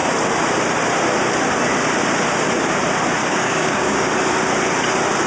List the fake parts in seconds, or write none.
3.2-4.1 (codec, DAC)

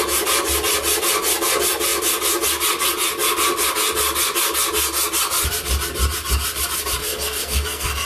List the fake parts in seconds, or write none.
7.0-8.1 (codec, SNAC)

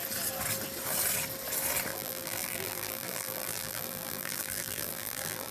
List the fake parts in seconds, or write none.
1.9-5.5 (vocoder, BigVGAN v2)